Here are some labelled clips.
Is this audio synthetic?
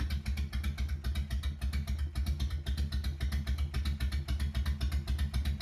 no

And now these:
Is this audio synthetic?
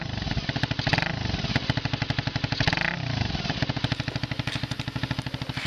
no